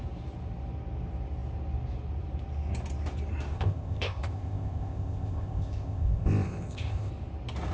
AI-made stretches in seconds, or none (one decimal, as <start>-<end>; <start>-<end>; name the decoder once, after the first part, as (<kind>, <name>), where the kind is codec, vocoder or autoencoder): 3.5-7.1 (codec, ZipCodec)